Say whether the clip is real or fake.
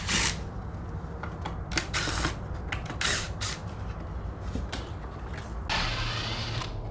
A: real